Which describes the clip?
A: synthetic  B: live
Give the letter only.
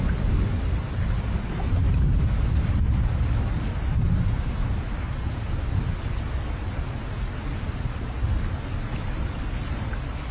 B